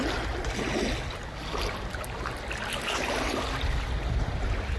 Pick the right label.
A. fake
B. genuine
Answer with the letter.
B